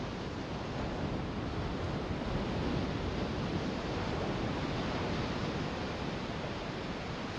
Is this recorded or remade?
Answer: recorded